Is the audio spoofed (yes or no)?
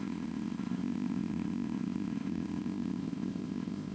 yes